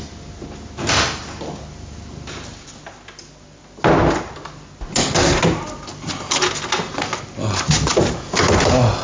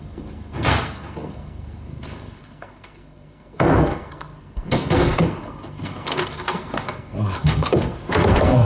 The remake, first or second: second